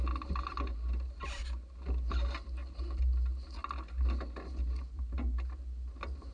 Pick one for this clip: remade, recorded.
recorded